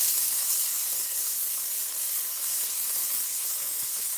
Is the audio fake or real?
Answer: fake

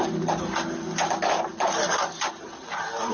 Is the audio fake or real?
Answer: real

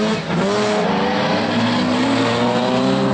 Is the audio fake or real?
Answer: real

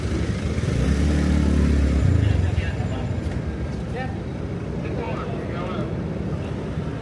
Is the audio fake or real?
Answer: real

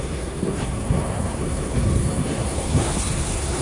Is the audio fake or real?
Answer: fake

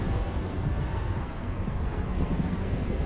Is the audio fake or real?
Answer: fake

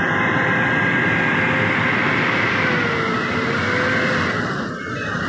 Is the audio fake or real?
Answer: real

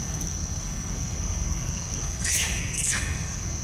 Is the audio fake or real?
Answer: fake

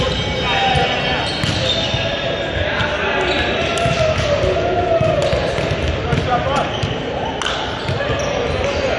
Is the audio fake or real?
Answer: real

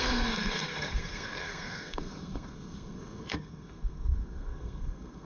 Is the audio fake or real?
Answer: fake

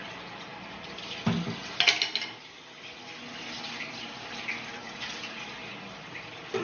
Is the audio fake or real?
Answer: real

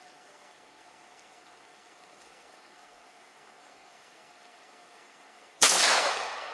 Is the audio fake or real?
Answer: fake